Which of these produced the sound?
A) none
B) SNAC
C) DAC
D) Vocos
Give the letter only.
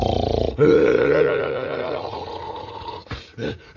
D